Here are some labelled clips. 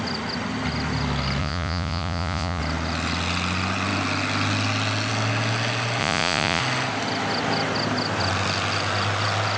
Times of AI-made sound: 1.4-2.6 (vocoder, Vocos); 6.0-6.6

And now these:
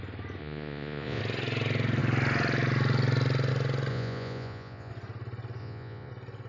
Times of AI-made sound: 0.4-1.2 (vocoder, Vocos); 3.9-4.9; 5.6-6.1

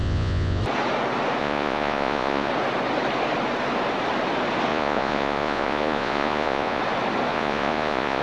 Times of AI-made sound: 0.0-0.6 (vocoder, Vocos); 1.4-2.5; 4.7-6.8; 7.3-8.2